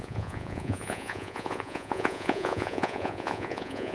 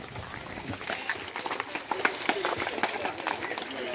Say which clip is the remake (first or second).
first